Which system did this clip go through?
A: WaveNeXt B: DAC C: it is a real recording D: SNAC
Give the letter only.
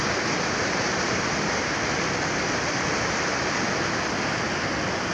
C